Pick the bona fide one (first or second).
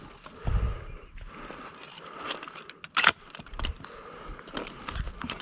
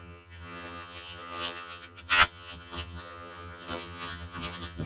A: first